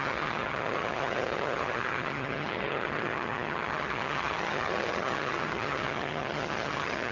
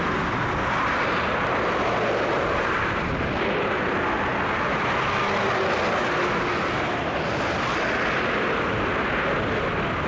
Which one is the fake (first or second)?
first